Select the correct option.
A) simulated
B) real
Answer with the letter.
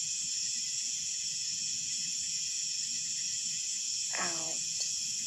A